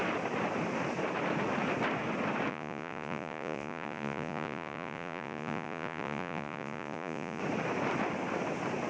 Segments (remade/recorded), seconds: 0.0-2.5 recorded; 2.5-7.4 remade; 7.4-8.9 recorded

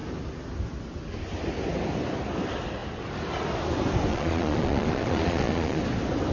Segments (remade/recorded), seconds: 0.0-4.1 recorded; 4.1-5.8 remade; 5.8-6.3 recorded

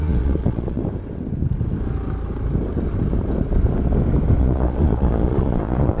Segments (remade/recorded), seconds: 0.0-0.8 remade; 0.8-4.4 recorded; 4.4-6.0 remade

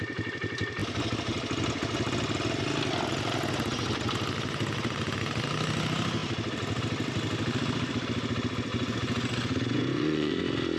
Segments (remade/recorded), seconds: 0.0-8.7 recorded; 8.7-10.4 remade; 10.4-10.8 recorded

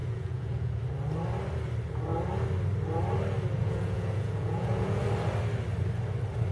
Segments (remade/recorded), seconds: 0.0-0.8 remade; 0.8-3.6 recorded; 3.6-5.0 remade; 5.0-6.5 recorded